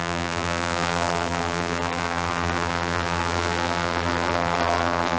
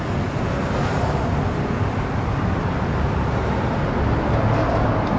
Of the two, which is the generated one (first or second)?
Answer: first